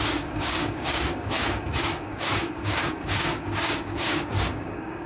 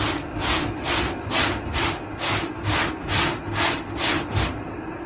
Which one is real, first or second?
second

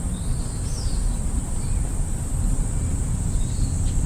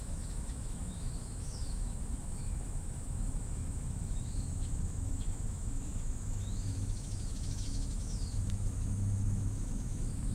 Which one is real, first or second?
first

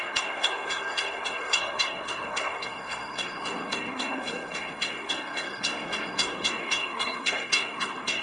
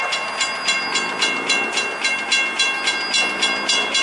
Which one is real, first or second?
second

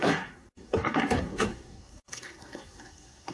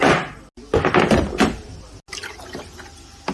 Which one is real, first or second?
second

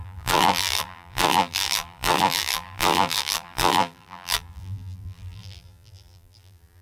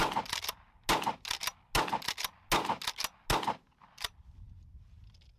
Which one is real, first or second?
second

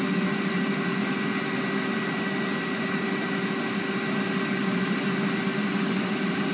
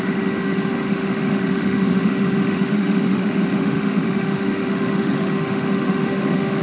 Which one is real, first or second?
first